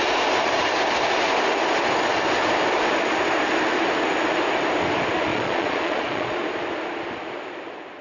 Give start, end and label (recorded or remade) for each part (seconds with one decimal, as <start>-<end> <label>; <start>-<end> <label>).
0.0-5.3 recorded; 5.3-6.4 remade; 6.4-8.0 recorded